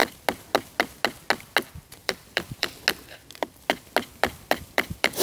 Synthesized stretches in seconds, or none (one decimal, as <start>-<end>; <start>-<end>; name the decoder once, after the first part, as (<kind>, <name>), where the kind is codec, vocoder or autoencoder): 2.0-2.8 (vocoder, BigVGAN v2); 4.1-5.2